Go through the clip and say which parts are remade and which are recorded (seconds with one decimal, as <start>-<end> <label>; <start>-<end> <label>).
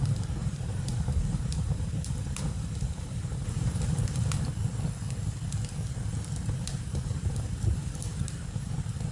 0.0-0.4 recorded; 0.4-4.4 remade; 4.4-6.1 recorded; 6.1-8.2 remade; 8.2-9.1 recorded